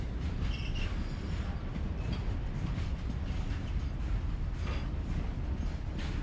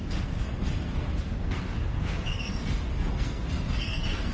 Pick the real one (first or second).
first